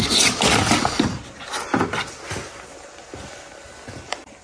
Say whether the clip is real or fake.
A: real